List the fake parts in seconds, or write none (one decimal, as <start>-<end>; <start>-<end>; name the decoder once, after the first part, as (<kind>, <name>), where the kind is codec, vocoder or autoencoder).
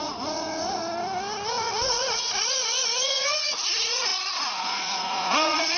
0.0-0.8 (vocoder, Vocos); 1.5-5.8